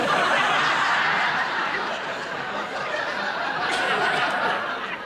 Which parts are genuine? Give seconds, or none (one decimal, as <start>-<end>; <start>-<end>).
0.0-1.4; 3.0-5.1